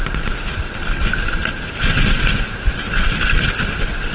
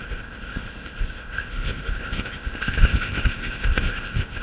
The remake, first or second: second